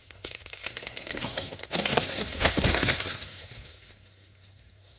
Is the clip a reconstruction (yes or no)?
yes